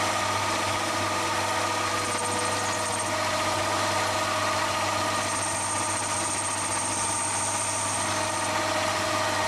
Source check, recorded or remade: recorded